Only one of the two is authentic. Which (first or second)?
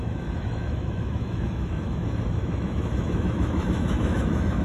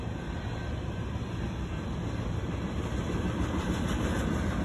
second